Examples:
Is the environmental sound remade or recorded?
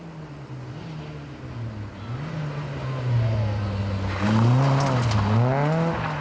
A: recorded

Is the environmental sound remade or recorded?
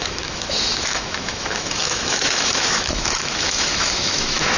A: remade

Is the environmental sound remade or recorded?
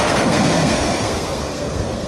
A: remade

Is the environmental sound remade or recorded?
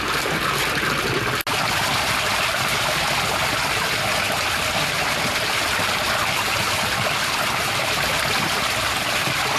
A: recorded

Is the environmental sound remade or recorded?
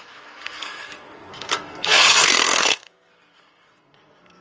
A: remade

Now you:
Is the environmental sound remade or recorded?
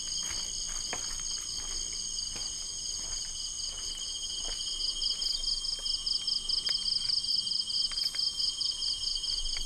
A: recorded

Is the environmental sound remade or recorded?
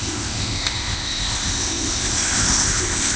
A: remade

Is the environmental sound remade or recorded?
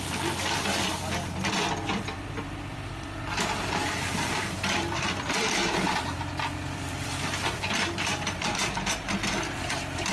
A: remade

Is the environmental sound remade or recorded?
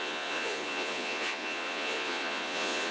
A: remade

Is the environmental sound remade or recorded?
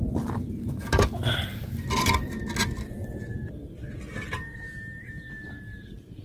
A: recorded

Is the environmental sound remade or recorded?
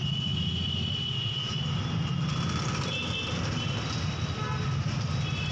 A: recorded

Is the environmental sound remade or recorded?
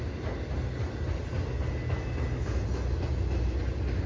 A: recorded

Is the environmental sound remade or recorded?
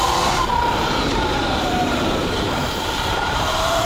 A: remade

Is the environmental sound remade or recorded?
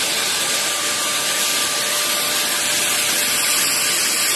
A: recorded